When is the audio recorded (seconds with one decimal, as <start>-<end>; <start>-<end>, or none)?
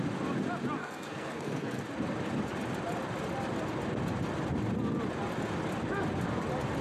0.0-0.8; 1.8-6.8